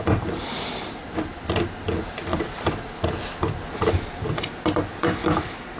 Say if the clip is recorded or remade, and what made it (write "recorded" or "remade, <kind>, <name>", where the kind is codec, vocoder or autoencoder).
recorded